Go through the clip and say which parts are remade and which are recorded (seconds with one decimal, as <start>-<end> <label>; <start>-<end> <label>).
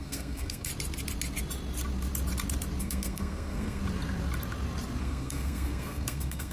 0.0-0.7 remade; 0.7-2.8 recorded; 2.8-3.8 remade; 3.8-5.0 recorded; 5.0-6.5 remade